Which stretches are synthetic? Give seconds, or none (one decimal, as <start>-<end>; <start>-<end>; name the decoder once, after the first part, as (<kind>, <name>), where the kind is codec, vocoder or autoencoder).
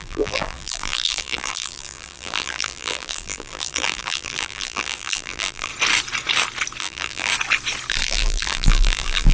0.0-5.7 (vocoder, BigVGAN v2); 6.8-7.3; 7.9-9.3